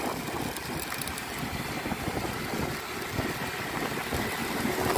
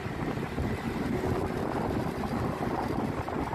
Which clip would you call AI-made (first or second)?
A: second